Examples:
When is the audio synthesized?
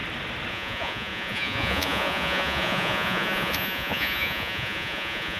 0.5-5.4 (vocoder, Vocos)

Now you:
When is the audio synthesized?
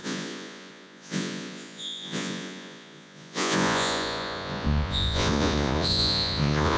0.0-6.8 (vocoder, Vocos)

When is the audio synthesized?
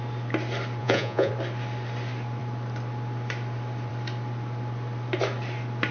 0.8-1.3 (vocoder, Vocos)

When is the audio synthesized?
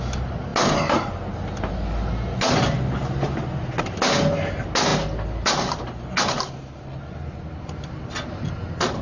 none